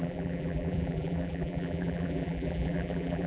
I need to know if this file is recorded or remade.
remade